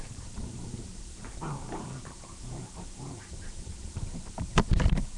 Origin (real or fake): fake